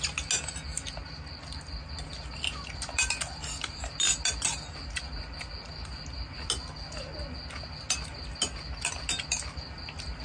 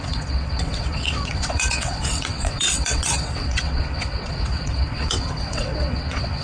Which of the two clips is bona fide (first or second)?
first